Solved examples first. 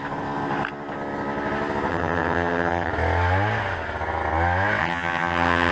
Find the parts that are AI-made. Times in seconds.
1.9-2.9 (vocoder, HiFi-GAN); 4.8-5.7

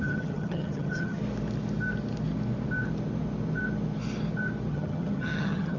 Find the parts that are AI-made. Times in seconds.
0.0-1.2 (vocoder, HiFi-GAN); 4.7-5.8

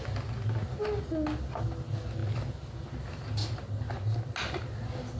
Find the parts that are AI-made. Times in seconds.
none

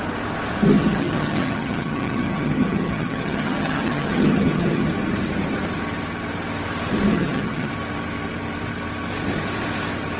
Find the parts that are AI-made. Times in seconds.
0.7-4.9 (vocoder, HiFi-GAN); 7.1-7.7

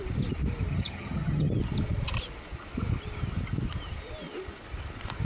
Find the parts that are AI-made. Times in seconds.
0.7-1.5 (vocoder, HiFi-GAN)